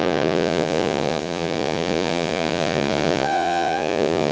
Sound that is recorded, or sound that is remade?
remade